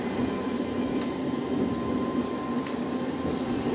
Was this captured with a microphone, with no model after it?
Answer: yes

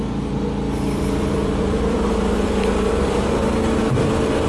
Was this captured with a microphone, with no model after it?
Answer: no